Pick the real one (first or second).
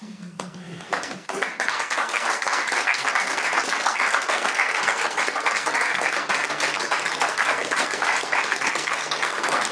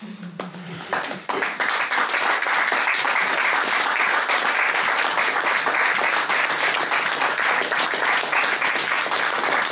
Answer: second